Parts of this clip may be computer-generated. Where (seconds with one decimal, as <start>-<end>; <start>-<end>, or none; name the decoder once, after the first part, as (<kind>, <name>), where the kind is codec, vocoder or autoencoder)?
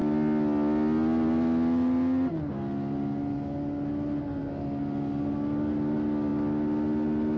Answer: none